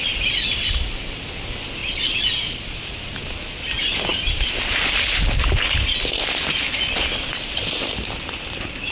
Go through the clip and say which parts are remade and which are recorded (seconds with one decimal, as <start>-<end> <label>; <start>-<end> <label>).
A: 0.0-1.8 recorded; 1.8-2.8 remade; 2.8-8.9 recorded